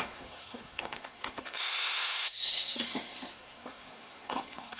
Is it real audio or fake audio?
fake